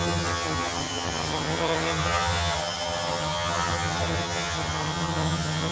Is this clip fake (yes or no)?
yes